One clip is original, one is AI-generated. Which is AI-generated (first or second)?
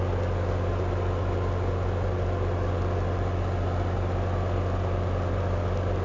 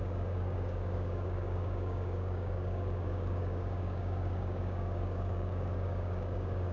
second